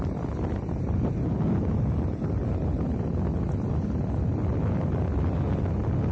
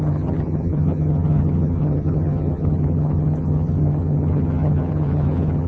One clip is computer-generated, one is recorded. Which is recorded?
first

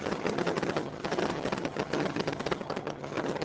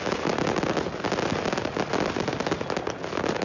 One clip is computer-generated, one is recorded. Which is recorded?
second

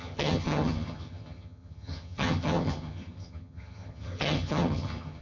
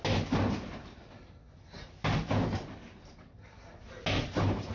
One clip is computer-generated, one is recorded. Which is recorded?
second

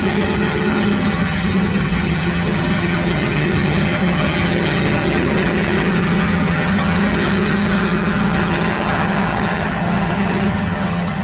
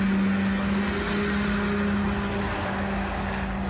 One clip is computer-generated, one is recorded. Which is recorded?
second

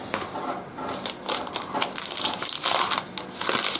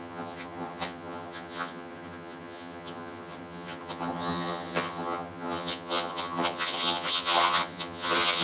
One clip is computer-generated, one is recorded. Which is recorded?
first